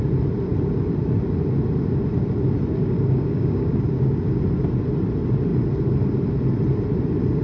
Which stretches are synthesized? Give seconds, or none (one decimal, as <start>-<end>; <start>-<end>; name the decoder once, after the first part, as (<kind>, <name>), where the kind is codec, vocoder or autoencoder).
2.8-4.4 (codec, DAC)